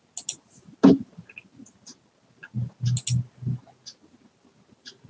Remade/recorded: recorded